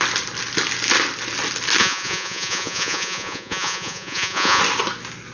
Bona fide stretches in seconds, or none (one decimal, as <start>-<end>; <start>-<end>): 0.0-1.8; 4.6-5.3